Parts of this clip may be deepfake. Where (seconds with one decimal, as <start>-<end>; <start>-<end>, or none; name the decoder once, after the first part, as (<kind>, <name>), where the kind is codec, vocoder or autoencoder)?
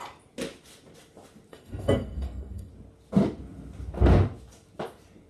1.5-2.7 (codec, SNAC)